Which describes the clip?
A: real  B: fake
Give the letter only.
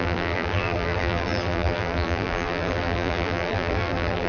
B